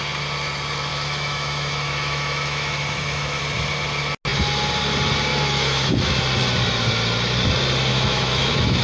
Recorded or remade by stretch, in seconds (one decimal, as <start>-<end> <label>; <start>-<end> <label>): 0.0-0.9 recorded; 0.9-3.4 remade; 3.4-5.3 recorded; 5.3-6.2 remade; 6.2-7.9 recorded; 7.9-8.8 remade